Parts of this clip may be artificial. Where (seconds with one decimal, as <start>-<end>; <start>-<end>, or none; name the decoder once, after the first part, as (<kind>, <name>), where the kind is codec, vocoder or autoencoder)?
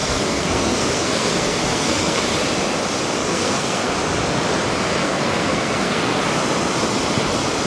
0.0-2.2 (codec, SNAC); 3.2-3.9; 5.0-6.2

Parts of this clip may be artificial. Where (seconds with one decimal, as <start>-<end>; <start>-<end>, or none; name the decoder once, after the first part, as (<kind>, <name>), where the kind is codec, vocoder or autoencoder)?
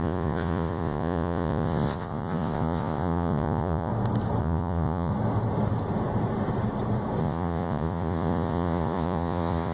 0.0-3.9 (vocoder, Vocos); 4.4-5.1; 7.2-9.7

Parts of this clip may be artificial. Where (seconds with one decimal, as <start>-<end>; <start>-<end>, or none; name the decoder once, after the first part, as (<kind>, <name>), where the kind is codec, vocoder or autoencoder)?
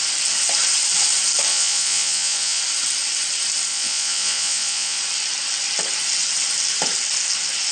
1.5-2.6 (vocoder, Vocos); 3.7-5.0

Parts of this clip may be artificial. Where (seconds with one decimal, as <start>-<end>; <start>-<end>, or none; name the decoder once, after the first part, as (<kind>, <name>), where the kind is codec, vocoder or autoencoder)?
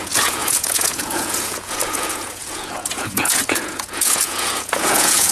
0.0-5.3 (vocoder, Vocos)